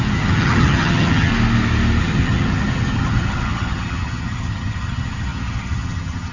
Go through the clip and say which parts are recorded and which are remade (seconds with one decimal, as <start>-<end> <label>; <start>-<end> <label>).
0.0-1.3 remade; 1.3-2.0 recorded; 2.0-6.3 remade